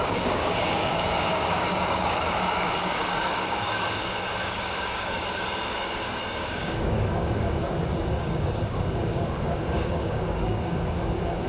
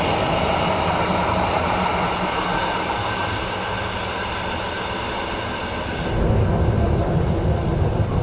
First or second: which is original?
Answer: second